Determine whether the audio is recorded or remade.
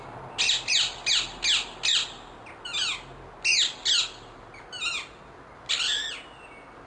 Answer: recorded